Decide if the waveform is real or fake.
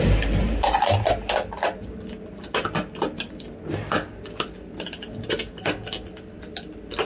real